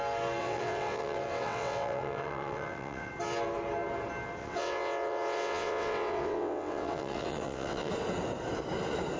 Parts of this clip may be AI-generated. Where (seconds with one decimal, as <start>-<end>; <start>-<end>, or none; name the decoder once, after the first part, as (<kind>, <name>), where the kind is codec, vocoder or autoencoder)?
0.4-3.1 (vocoder, WaveNeXt); 4.4-7.9